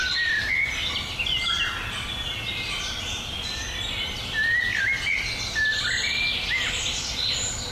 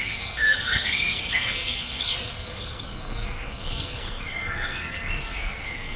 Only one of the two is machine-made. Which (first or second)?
second